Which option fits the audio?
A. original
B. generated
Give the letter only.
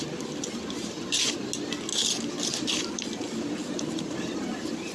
A